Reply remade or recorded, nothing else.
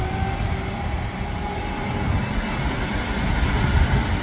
recorded